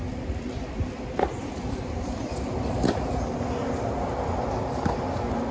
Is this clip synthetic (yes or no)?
no